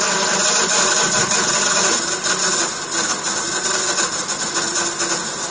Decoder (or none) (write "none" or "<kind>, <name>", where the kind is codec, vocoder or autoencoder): none